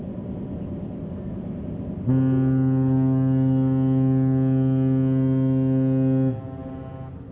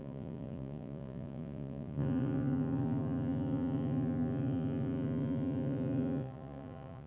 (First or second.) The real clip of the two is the first